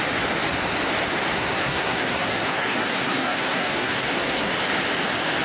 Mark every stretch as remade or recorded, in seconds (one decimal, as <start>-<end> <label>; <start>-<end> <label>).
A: 0.0-1.3 recorded; 1.3-4.5 remade; 4.5-5.4 recorded